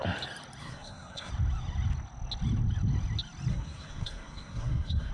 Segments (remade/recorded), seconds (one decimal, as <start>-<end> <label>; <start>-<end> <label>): 0.0-0.6 recorded; 0.6-1.3 remade; 1.3-3.5 recorded; 3.5-5.1 remade